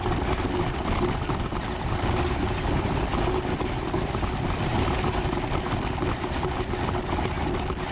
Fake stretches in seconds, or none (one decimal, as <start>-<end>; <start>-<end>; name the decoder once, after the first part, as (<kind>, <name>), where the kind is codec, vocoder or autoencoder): none